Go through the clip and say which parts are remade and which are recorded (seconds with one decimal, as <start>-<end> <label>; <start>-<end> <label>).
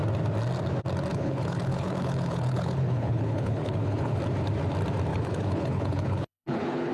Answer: 0.0-1.1 recorded; 1.1-4.2 remade; 4.2-5.1 recorded; 5.1-6.9 remade